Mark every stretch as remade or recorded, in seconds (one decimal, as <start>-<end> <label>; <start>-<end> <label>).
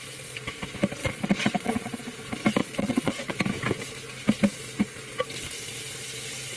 0.0-1.0 recorded; 1.0-2.0 remade; 2.0-2.6 recorded; 2.6-3.3 remade; 3.3-6.6 recorded